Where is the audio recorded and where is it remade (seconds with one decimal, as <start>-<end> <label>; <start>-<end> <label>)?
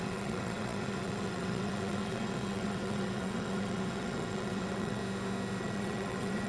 0.0-5.0 remade; 5.0-5.6 recorded; 5.6-6.5 remade